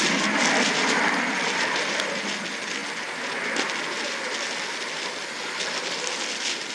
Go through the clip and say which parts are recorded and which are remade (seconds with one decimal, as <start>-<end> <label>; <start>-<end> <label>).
0.0-6.7 recorded